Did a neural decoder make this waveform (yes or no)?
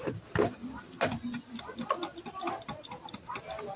no